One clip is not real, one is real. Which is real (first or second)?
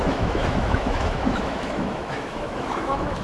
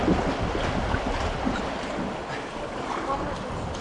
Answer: second